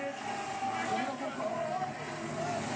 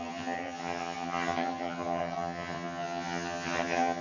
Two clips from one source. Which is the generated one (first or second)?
second